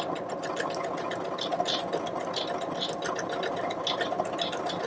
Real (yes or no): yes